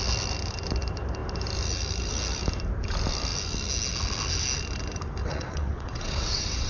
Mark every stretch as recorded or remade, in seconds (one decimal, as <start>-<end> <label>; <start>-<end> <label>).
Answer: 0.0-5.2 recorded; 5.2-6.7 remade